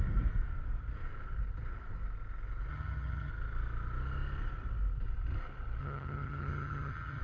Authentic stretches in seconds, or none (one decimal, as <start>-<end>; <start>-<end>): 0.0-2.7; 3.3-5.8